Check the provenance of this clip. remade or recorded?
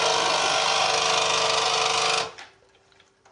recorded